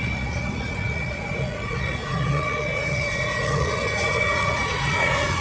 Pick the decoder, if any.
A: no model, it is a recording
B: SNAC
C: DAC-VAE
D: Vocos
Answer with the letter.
D